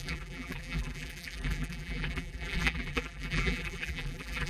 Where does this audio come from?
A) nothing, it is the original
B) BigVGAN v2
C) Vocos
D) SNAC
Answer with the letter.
B